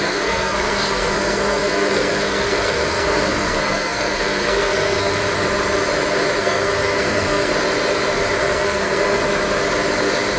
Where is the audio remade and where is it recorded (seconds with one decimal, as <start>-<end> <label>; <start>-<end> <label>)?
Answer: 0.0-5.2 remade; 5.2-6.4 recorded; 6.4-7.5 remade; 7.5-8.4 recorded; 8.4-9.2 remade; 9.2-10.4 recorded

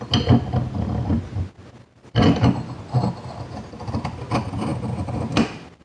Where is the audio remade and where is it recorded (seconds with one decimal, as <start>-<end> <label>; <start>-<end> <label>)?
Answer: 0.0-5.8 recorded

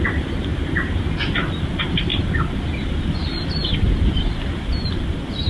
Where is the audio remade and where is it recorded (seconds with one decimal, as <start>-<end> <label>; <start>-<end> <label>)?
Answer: 0.0-5.5 recorded